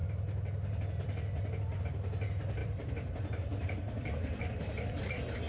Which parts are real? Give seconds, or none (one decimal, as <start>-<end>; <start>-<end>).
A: 0.0-2.6; 5.0-5.5